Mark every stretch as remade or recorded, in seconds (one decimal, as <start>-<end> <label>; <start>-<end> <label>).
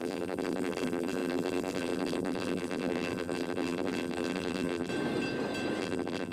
0.0-4.9 remade; 4.9-5.8 recorded; 5.8-6.3 remade